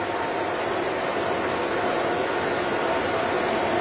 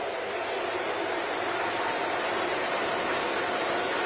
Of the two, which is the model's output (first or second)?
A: second